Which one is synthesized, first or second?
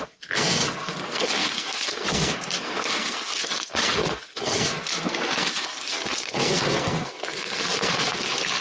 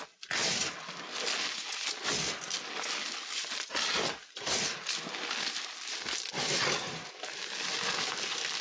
first